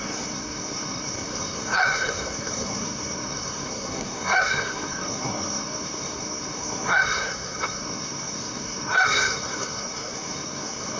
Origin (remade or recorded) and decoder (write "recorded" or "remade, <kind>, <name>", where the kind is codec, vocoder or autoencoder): remade, codec, SNAC